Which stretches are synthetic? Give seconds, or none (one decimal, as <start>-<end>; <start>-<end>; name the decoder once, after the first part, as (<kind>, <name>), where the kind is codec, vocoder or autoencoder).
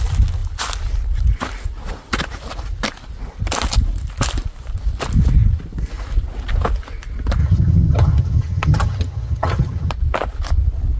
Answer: 7.4-9.9 (vocoder, HiFi-GAN)